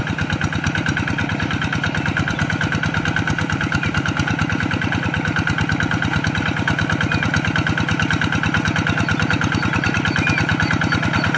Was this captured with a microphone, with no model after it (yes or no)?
yes